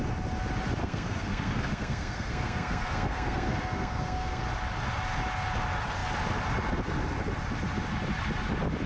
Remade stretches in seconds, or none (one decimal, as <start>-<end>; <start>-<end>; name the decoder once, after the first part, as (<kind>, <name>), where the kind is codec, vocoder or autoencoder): 0.8-4.4 (codec, SNAC)